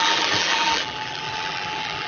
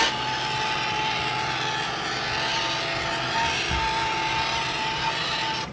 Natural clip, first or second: second